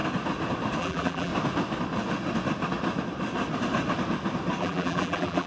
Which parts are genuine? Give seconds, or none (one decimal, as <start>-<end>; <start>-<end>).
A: 0.0-0.8; 1.3-4.6